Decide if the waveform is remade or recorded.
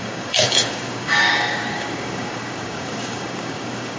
remade